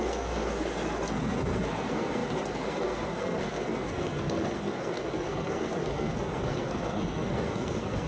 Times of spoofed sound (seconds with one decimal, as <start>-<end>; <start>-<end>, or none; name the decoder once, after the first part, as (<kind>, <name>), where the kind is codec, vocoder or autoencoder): 0.0-8.1 (codec, SNAC)